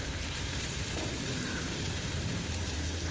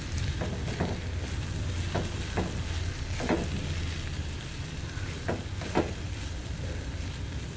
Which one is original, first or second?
second